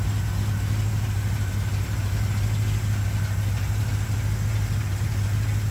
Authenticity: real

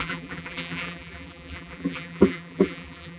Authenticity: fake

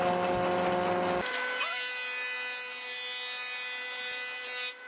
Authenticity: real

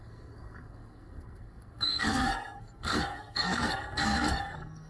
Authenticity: fake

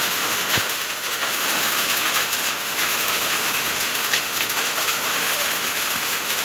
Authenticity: fake